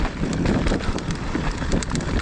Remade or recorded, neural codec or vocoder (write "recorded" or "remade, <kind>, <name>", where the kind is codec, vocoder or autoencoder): recorded